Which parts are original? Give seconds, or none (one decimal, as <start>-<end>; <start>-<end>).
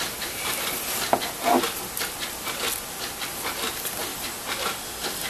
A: 0.0-5.3